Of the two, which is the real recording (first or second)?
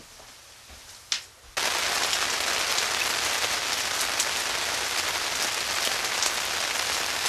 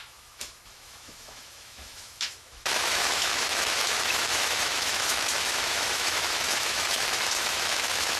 first